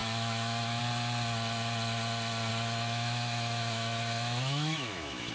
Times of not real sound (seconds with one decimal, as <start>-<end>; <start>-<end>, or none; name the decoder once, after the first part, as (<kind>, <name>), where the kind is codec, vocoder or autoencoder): 0.0-0.8 (autoencoder, DAC-VAE); 2.5-5.3